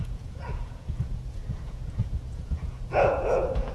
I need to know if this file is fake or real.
fake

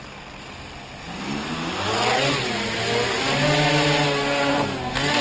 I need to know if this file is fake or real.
real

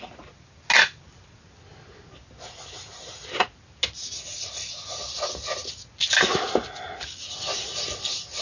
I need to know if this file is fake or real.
real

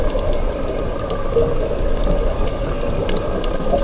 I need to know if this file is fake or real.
real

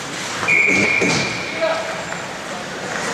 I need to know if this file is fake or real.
real